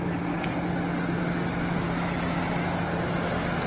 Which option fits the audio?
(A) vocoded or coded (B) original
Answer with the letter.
B